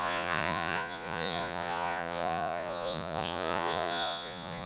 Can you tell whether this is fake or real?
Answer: fake